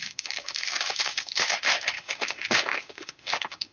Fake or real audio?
fake